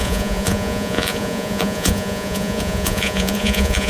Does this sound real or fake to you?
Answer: fake